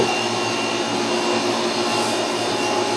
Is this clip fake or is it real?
real